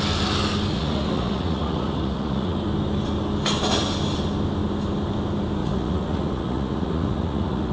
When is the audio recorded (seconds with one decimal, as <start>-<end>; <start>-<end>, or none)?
0.0-0.7; 2.6-5.6